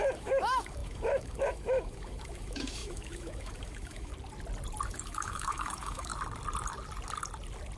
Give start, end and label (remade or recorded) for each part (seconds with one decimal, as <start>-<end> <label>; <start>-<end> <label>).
0.0-4.1 remade; 4.1-4.9 recorded; 4.9-6.1 remade; 6.1-7.8 recorded